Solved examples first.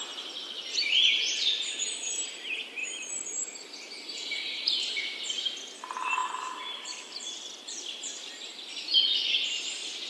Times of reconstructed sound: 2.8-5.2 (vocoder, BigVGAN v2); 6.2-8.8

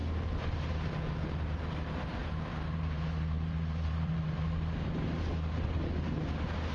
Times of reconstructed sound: 2.2-4.4 (vocoder, BigVGAN v2)

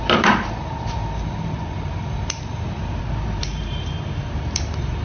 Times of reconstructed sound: 0.0-2.5 (vocoder, BigVGAN v2); 3.0-5.0

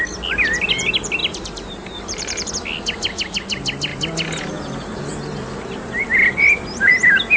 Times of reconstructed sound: 1.2-2.5 (vocoder, BigVGAN v2)